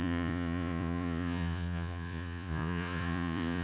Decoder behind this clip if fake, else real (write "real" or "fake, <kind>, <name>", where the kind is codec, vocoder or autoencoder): fake, vocoder, Vocos